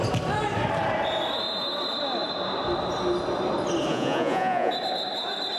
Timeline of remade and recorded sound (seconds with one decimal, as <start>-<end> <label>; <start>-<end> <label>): 0.0-3.9 recorded; 3.9-4.7 remade; 4.7-5.6 recorded